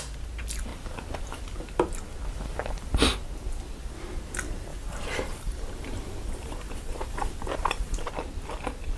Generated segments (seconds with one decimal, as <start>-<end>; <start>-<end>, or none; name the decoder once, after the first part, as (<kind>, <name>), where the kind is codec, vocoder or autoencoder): 4.7-8.1 (vocoder, BigVGAN v2)